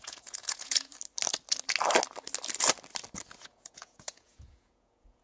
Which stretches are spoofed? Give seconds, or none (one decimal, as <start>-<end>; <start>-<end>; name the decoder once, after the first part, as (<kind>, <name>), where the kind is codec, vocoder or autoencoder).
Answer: 0.0-0.9 (vocoder, Vocos); 3.4-5.2

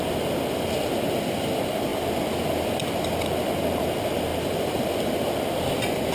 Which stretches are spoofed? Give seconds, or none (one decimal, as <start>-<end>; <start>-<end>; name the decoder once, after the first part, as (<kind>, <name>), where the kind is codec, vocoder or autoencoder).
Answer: none

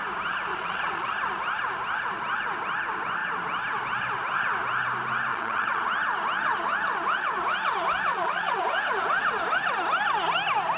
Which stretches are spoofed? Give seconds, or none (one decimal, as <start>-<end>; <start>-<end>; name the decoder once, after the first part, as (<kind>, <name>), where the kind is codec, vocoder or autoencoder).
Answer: 0.5-1.1 (vocoder, Vocos); 5.3-5.8; 8.1-8.6